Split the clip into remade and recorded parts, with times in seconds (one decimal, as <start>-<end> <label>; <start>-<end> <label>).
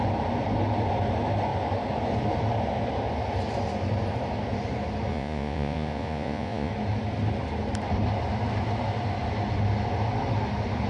0.0-5.1 recorded; 5.1-6.7 remade; 6.7-10.9 recorded